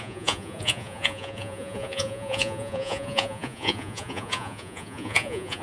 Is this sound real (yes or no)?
no